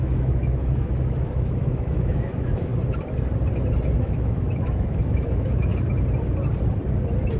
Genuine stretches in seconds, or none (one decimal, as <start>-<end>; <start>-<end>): 2.7-4.0; 5.7-7.4